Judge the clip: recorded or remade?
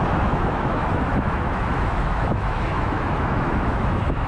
remade